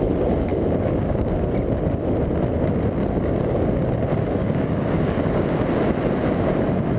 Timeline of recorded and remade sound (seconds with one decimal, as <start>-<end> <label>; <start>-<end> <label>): 0.0-0.5 recorded; 0.5-1.3 remade; 1.3-3.0 recorded; 3.0-3.7 remade; 3.7-4.4 recorded; 4.4-5.6 remade; 5.6-7.0 recorded